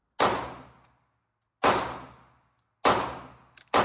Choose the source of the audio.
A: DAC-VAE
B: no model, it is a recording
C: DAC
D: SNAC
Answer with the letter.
B